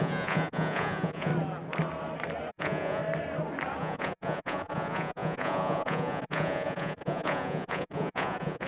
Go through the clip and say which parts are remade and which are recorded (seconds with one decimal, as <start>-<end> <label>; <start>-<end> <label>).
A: 0.0-1.3 remade; 1.3-2.5 recorded; 2.5-3.0 remade; 3.0-3.8 recorded; 3.8-8.7 remade